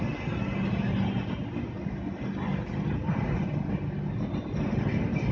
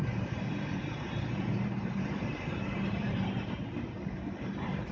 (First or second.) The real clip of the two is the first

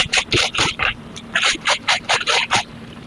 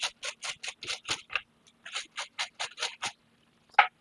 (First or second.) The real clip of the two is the second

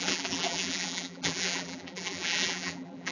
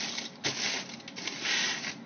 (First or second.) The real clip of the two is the second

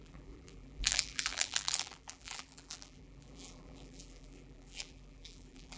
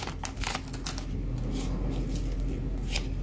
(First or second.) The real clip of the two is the second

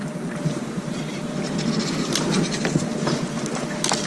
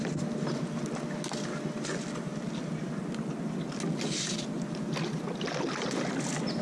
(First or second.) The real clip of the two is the second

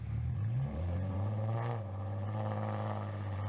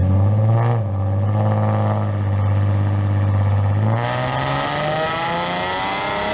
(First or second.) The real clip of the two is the second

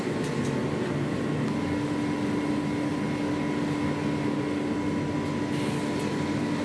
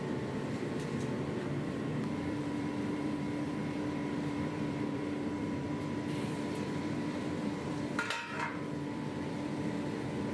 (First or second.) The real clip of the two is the first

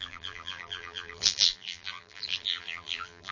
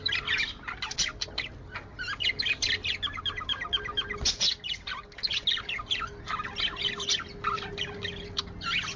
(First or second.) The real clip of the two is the second